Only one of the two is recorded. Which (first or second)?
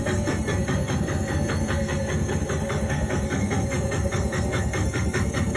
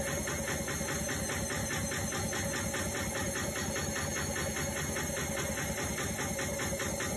second